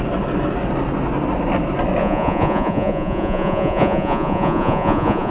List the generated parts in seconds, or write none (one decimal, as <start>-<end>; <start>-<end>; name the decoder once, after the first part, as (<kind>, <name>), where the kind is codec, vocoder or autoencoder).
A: 2.0-5.3 (vocoder, Vocos)